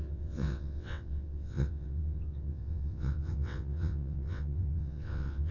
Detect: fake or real fake